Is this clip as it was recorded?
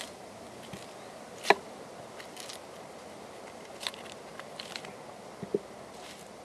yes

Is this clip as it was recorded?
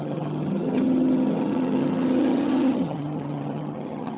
no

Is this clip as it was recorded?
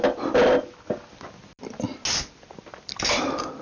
yes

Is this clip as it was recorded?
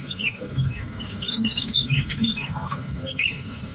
no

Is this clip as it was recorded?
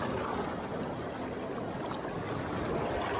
yes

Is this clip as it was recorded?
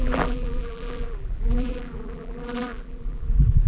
no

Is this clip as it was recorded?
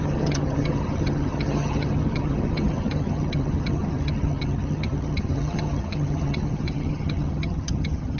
no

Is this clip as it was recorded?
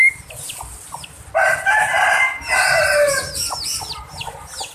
yes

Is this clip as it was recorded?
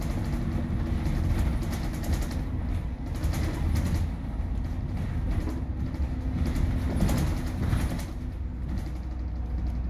yes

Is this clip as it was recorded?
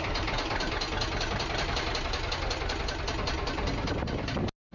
yes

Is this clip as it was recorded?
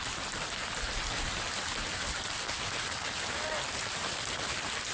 yes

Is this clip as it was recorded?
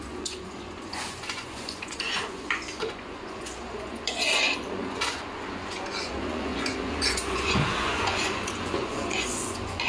no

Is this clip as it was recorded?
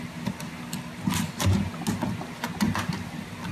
yes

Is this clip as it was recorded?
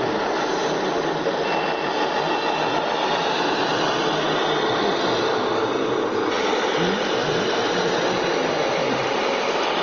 yes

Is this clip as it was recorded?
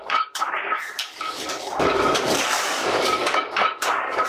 no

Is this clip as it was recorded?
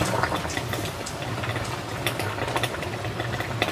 yes